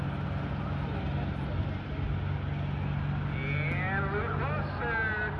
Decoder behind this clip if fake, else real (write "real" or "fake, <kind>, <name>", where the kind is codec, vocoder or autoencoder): real